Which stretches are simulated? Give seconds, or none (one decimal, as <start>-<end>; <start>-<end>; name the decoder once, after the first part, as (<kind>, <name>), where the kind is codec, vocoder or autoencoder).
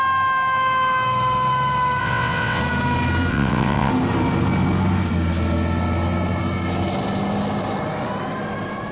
2.0-2.6 (vocoder, WaveNeXt); 3.3-3.9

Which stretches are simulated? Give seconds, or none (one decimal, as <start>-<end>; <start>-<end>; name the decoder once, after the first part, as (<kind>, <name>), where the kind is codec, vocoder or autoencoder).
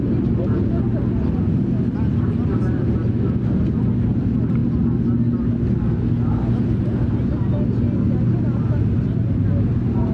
none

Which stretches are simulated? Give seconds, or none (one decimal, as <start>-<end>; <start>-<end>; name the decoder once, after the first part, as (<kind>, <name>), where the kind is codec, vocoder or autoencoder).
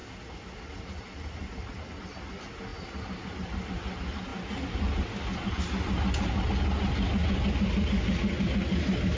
none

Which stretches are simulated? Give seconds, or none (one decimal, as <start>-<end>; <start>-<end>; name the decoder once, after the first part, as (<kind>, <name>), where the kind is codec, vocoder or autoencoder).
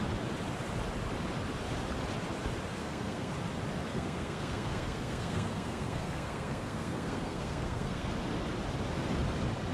2.8-3.3 (codec, SNAC); 3.9-8.1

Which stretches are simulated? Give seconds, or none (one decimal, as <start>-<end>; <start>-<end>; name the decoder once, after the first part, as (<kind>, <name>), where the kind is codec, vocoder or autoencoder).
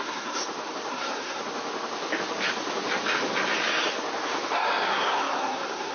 0.0-0.4 (codec, SNAC); 0.9-1.4; 4.9-5.9